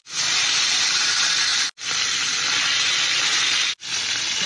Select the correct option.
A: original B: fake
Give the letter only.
A